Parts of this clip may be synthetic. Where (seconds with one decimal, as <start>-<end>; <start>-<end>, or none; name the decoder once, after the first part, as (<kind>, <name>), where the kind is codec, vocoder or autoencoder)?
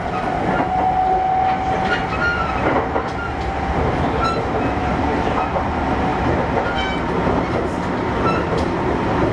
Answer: none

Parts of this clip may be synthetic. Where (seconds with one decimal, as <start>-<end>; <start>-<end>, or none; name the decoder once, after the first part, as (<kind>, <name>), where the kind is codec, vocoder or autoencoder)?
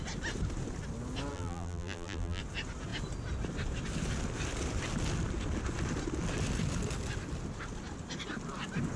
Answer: 1.3-2.4 (vocoder, BigVGAN v2)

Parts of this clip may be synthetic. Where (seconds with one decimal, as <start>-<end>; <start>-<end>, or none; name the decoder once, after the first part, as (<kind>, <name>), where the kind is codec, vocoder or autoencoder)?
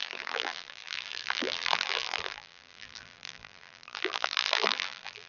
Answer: 0.0-5.3 (vocoder, BigVGAN v2)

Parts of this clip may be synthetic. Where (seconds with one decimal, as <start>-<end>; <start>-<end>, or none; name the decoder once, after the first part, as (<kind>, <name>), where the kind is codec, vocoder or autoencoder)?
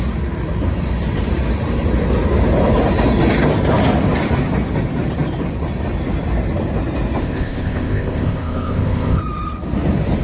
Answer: 7.2-9.2 (codec, ZipCodec)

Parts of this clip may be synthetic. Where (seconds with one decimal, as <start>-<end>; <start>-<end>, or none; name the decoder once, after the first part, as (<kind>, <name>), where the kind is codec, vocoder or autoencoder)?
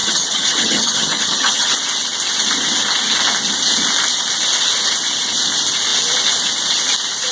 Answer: 0.0-1.7 (vocoder, HiFi-GAN)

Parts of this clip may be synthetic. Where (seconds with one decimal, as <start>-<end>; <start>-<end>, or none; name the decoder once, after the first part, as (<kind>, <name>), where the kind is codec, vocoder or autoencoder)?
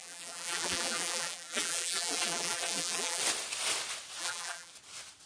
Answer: 0.0-3.2 (vocoder, BigVGAN v2); 4.2-4.7